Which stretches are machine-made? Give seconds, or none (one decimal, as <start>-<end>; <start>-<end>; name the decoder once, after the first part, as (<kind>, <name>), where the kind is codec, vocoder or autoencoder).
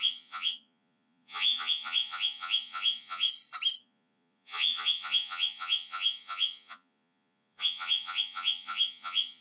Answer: 0.0-3.3 (vocoder, Vocos); 3.8-9.4